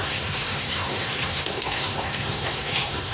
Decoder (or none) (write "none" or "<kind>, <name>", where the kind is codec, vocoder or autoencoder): codec, SNAC